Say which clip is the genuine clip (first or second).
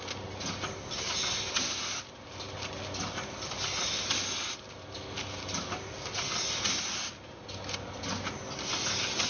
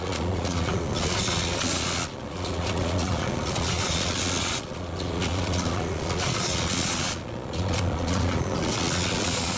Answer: first